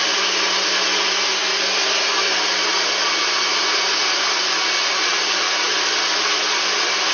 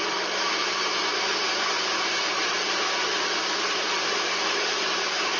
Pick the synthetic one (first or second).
second